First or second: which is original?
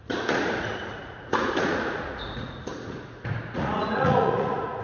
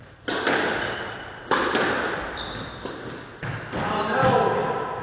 second